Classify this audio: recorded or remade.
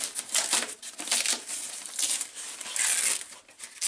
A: recorded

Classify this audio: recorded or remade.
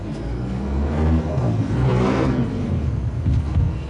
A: remade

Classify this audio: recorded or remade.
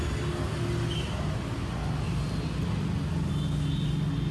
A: recorded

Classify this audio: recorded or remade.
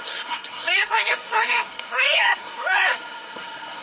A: remade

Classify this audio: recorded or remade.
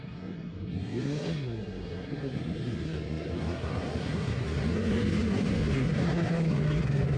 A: remade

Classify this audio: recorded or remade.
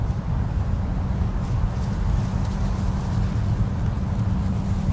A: recorded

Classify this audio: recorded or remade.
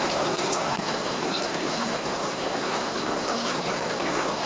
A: remade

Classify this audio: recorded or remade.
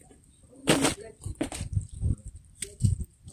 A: recorded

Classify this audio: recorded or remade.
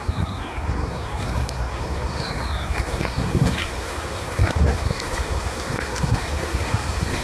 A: remade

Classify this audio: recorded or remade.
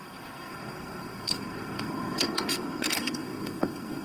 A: remade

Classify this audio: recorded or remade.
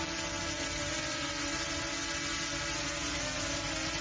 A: recorded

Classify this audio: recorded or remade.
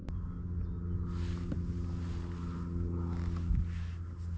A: recorded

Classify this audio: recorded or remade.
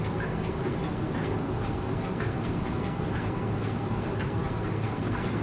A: remade